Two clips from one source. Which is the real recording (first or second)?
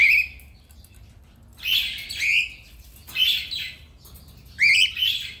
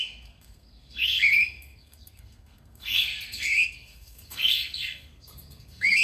first